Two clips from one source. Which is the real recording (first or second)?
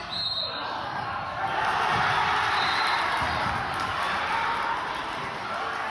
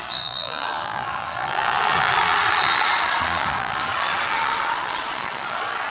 first